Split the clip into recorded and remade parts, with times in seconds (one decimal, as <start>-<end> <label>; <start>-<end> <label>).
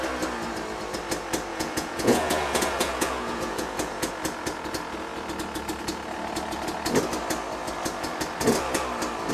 0.0-1.5 recorded; 1.5-4.1 remade; 4.1-9.3 recorded